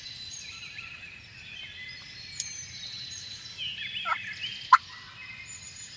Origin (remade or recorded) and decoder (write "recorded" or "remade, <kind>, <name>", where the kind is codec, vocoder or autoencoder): recorded